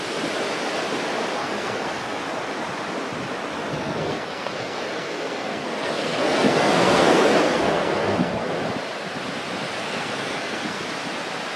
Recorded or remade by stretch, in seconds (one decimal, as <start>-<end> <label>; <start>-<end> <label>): 0.0-1.4 recorded; 1.4-2.2 remade; 2.2-3.7 recorded; 3.7-8.5 remade; 8.5-9.8 recorded; 9.8-10.8 remade; 10.8-11.6 recorded